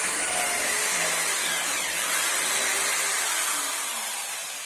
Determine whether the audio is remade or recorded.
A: recorded